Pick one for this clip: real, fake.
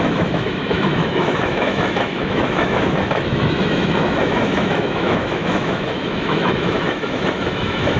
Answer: fake